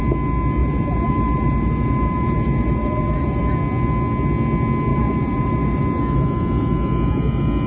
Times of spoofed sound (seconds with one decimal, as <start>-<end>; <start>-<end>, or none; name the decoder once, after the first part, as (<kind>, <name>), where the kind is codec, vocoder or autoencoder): 0.6-3.4 (vocoder, BigVGAN v2); 4.9-5.8